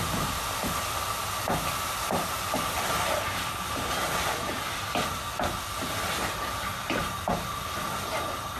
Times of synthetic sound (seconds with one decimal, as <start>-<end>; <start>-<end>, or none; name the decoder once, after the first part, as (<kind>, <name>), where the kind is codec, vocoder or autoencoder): 1.2-4.5 (vocoder, BigVGAN v2)